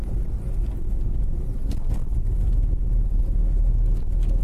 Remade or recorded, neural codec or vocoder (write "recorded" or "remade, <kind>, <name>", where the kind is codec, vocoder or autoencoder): recorded